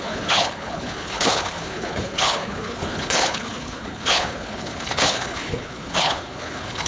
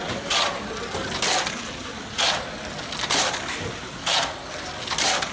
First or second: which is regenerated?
first